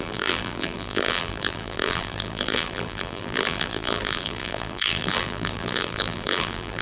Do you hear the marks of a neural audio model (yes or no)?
yes